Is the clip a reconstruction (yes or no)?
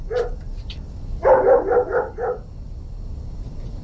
no